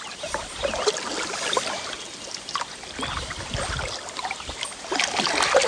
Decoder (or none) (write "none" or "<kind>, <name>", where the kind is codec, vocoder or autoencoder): none